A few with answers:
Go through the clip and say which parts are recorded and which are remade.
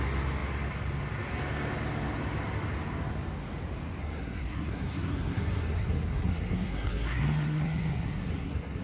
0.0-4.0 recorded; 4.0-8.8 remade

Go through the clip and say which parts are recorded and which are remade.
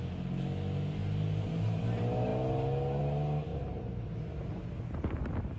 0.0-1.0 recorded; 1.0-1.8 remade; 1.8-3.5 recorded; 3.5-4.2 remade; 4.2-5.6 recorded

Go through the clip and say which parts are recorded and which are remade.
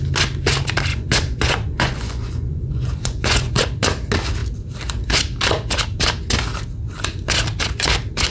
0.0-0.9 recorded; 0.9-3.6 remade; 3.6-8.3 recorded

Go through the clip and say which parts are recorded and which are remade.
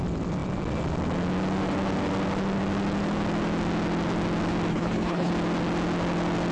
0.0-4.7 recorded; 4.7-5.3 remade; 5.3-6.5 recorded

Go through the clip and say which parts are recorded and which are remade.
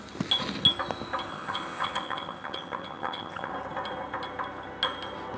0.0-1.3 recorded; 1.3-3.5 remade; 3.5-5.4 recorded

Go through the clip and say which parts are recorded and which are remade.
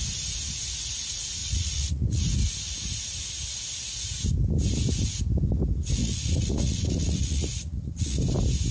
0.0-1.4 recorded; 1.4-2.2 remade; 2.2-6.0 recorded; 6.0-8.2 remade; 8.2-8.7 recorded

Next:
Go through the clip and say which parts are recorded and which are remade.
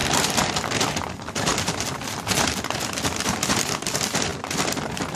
0.0-4.3 remade; 4.3-5.1 recorded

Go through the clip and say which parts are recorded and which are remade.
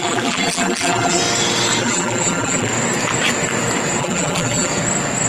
0.0-1.2 remade; 1.2-1.8 recorded; 1.8-2.7 remade; 2.7-4.0 recorded; 4.0-4.7 remade; 4.7-5.3 recorded